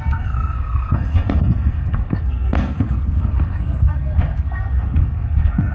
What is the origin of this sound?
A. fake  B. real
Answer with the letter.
A